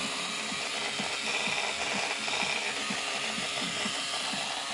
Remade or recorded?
recorded